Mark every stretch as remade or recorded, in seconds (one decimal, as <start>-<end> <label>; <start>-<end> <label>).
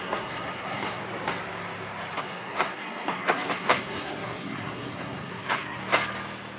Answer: 0.0-1.0 remade; 1.0-2.2 recorded; 2.2-5.8 remade; 5.8-6.6 recorded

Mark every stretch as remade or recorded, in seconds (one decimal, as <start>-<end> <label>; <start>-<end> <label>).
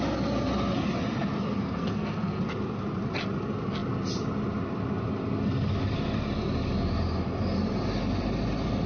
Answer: 0.0-1.6 recorded; 1.6-2.4 remade; 2.4-8.9 recorded